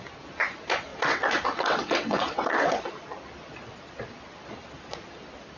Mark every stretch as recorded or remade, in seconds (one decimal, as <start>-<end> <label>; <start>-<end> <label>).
0.0-0.9 recorded; 0.9-2.8 remade; 2.8-5.6 recorded